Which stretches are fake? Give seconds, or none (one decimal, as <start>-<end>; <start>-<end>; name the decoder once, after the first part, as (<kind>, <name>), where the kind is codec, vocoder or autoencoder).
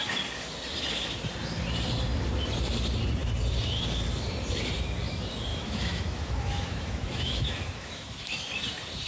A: 5.5-8.4 (autoencoder, DAC-VAE)